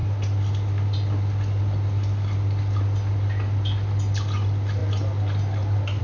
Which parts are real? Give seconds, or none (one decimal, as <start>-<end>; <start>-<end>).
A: 0.0-6.0